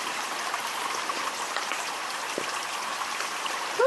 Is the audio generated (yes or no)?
yes